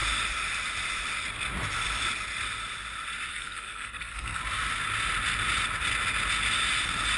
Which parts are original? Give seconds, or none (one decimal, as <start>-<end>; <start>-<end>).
0.0-3.3; 4.4-7.2